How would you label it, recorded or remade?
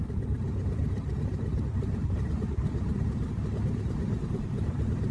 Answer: remade